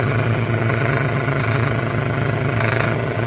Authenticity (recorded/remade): remade